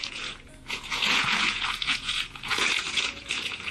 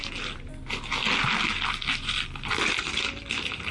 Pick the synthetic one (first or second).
first